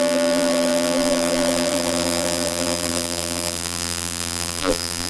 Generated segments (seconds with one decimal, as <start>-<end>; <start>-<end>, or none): 0.0-5.1